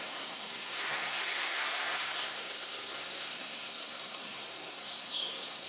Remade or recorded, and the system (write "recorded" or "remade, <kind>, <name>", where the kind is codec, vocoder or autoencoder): remade, codec, SNAC